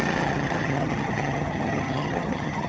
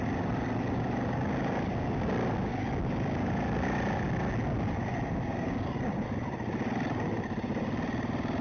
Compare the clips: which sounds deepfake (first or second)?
first